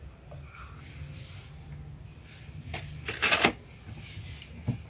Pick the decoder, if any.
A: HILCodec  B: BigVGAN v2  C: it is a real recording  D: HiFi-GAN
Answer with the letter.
C